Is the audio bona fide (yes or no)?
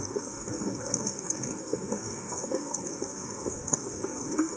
no